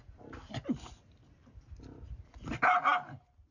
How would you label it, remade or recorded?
recorded